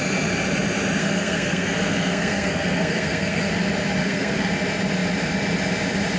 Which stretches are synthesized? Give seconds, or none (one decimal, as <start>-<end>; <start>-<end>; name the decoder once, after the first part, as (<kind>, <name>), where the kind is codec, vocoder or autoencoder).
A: 1.0-3.5 (codec, SNAC); 4.0-4.5